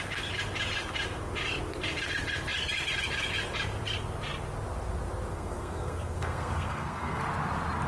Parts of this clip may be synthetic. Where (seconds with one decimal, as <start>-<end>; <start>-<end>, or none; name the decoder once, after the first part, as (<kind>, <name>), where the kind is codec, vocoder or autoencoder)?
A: 5.3-7.2 (codec, SNAC)